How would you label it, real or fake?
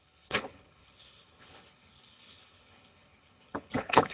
fake